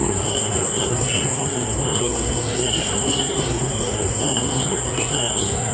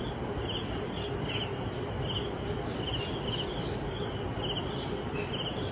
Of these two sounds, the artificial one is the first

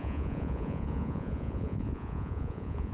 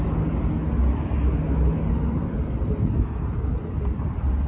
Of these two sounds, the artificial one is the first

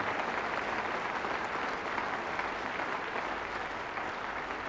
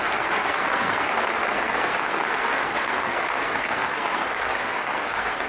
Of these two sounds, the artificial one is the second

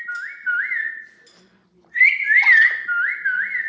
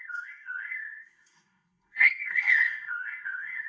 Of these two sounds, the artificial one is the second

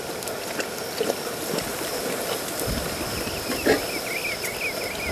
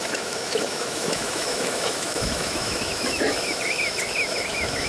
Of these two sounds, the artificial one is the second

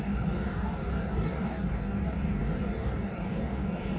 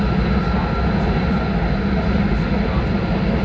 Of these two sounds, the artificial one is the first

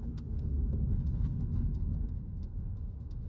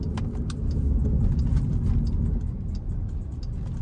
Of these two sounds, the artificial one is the first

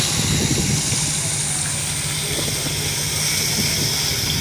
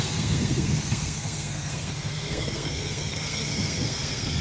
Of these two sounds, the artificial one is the second